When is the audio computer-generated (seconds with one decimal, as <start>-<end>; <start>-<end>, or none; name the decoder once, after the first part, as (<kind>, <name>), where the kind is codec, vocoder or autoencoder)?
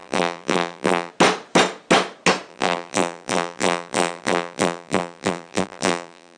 0.0-1.1 (vocoder, BigVGAN v2); 2.5-6.4